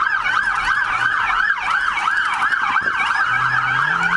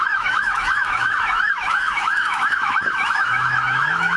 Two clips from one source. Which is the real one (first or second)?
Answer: first